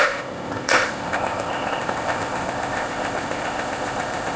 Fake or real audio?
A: fake